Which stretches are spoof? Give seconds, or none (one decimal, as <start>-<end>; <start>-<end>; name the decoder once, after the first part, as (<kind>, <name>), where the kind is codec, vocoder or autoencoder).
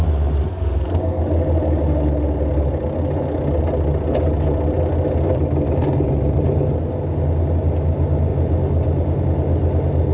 0.5-1.2 (codec, SNAC)